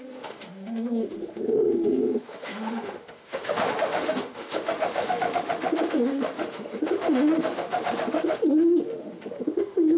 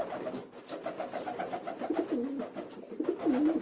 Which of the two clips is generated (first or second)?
first